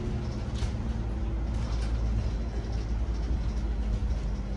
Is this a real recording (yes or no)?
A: yes